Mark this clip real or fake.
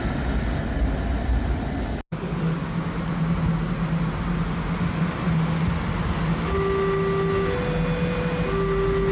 real